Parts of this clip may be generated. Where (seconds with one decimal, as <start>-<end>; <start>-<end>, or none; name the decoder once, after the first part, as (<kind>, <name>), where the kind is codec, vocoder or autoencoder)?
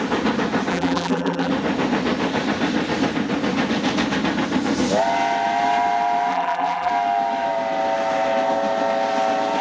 0.7-1.5 (vocoder, BigVGAN v2); 6.3-6.9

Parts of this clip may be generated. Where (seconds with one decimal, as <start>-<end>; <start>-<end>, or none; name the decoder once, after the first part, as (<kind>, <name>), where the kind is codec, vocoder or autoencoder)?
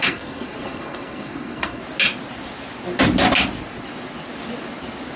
0.0-1.8 (codec, SNAC)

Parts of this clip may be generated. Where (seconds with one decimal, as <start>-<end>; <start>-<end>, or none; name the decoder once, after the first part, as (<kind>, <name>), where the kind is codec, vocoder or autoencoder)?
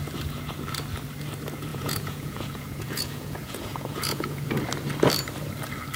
1.7-4.5 (vocoder, Vocos)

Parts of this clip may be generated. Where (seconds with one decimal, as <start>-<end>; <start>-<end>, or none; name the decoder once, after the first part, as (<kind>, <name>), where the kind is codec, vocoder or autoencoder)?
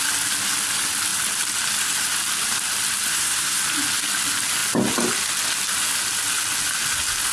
3.1-3.6 (codec, SNAC)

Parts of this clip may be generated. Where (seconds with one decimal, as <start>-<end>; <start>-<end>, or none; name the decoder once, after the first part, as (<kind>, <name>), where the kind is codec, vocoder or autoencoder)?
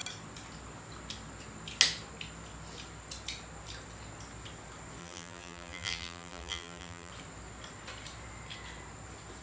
5.0-7.1 (vocoder, BigVGAN v2)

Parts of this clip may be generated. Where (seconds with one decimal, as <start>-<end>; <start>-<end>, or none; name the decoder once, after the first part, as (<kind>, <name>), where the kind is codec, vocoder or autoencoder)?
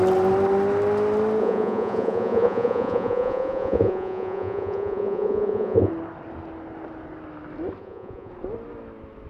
1.4-5.9 (vocoder, Vocos); 7.8-8.3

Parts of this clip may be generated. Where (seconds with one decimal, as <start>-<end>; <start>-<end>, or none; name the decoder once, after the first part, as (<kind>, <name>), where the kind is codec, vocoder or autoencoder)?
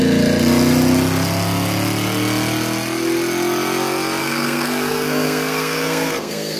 4.2-6.6 (codec, SNAC)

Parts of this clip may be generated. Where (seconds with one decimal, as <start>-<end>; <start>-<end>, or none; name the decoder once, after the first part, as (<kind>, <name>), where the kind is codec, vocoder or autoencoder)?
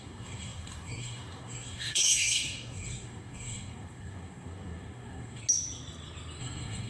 0.0-5.4 (codec, SNAC); 6.4-6.9